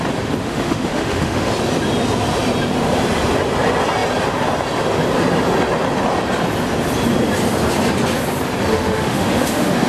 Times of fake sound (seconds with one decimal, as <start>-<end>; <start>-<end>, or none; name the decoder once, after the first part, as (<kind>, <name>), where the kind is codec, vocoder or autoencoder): 0.4-1.5 (autoencoder, DAC-VAE); 8.7-9.9